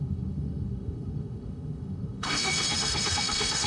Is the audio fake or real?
fake